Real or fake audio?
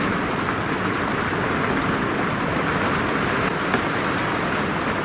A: real